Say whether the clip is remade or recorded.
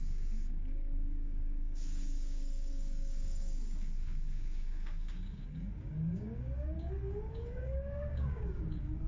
remade